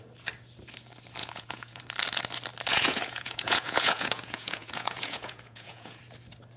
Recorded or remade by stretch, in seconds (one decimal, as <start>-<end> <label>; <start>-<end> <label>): 0.0-1.2 recorded; 1.2-1.8 remade; 1.8-2.7 recorded; 2.7-6.0 remade; 6.0-6.6 recorded